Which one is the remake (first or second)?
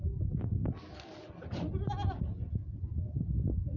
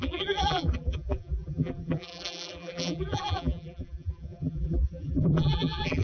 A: second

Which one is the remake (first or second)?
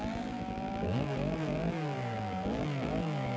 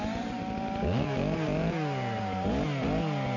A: first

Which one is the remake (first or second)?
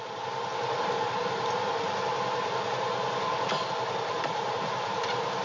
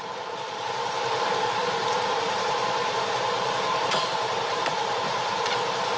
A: second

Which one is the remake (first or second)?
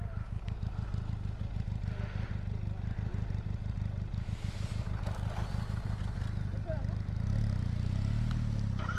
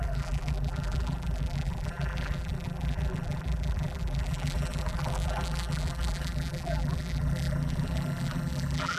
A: second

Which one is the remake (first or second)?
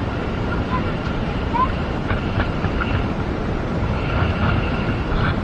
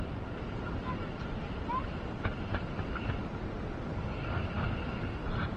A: first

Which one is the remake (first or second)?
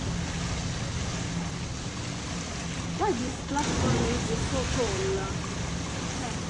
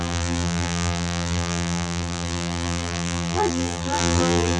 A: second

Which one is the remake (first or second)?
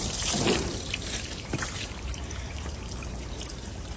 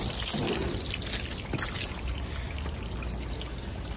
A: first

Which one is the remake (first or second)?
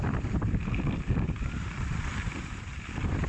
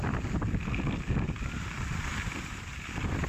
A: first